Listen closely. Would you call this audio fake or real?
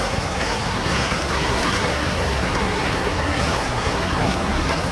fake